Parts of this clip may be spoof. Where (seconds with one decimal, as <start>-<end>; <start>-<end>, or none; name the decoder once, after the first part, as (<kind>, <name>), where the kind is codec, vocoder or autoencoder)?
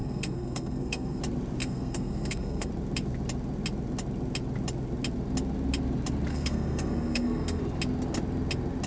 0.0-1.2 (codec, SNAC); 1.6-2.7; 6.3-7.6